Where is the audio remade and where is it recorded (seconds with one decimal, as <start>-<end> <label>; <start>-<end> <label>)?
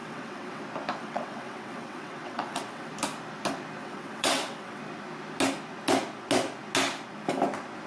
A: 0.0-0.6 remade; 0.6-1.0 recorded; 1.0-2.9 remade; 2.9-3.8 recorded; 3.8-4.8 remade; 4.8-7.9 recorded